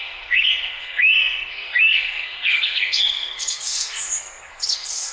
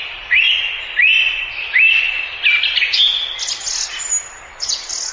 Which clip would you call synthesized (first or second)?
first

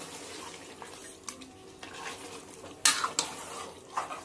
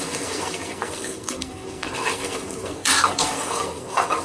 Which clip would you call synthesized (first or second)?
second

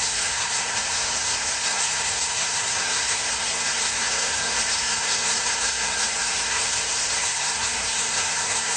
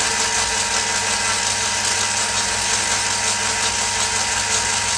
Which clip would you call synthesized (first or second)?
first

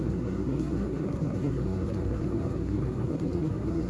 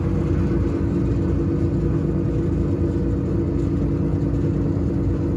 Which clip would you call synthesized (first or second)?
first